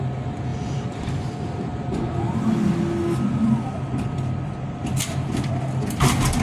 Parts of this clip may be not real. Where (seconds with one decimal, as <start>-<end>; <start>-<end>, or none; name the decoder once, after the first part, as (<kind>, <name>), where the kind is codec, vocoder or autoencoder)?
0.5-1.1 (vocoder, BigVGAN v2)